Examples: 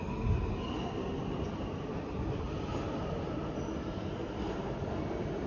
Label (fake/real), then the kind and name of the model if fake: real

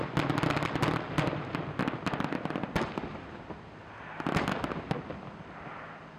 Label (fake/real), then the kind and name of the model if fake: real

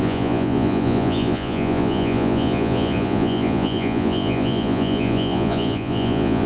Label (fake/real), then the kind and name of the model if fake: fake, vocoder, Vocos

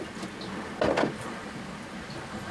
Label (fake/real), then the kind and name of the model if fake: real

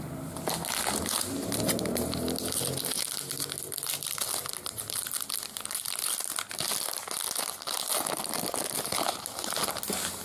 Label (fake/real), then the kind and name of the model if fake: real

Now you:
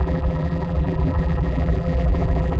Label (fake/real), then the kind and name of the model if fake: fake, vocoder, BigVGAN v2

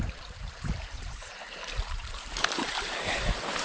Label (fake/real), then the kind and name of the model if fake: fake, vocoder, BigVGAN v2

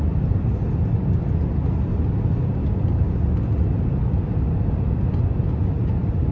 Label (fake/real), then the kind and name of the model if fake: real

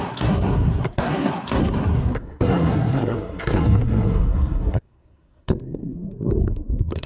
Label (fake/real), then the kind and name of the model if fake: fake, codec, SNAC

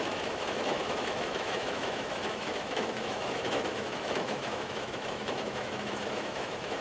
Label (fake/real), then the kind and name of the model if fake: fake, autoencoder, DAC-VAE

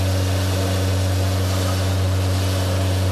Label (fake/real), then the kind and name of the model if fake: real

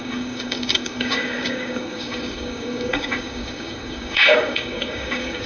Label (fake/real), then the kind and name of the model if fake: fake, codec, DAC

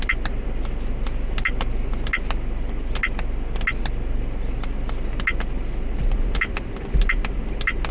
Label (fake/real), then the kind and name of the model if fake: real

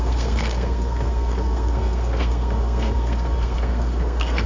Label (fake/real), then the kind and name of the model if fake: fake, codec, SNAC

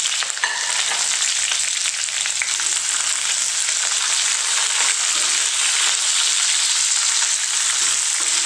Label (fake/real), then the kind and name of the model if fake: real